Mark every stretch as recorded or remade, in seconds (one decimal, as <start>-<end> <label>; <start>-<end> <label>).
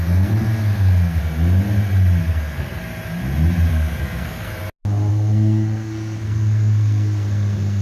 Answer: 0.0-1.2 remade; 1.2-2.2 recorded; 2.2-2.8 remade; 2.8-3.7 recorded; 3.7-4.5 remade; 4.5-5.1 recorded; 5.1-7.8 remade